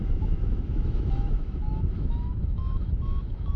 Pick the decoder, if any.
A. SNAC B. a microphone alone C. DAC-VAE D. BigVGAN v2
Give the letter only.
C